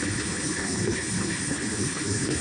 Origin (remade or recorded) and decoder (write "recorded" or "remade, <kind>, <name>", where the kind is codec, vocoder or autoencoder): remade, codec, HILCodec